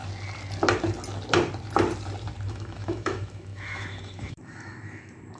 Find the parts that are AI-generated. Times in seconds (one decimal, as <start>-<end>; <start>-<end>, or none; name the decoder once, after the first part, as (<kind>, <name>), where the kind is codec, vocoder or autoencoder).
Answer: 2.5-5.4 (autoencoder, DAC-VAE)